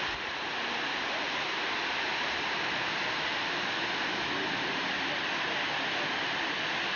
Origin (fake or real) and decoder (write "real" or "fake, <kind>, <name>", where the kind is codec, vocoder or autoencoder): real